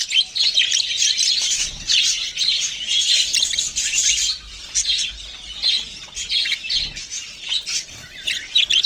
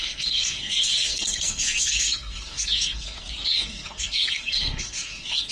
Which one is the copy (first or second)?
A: second